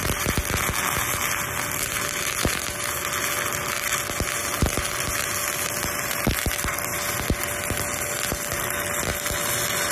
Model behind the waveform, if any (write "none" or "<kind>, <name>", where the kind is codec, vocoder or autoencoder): none